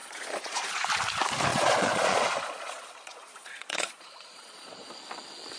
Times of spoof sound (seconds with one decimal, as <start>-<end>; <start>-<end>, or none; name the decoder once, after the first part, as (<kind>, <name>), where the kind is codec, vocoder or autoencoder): 0.0-0.9 (vocoder, Vocos); 1.5-4.9